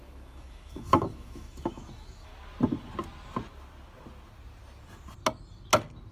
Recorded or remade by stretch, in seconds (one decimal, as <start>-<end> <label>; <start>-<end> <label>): 0.0-2.3 remade; 2.3-6.1 recorded